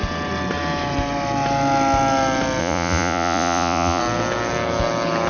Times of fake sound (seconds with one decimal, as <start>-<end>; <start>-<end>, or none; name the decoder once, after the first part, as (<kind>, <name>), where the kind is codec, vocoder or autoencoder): 2.6-4.0 (vocoder, Vocos)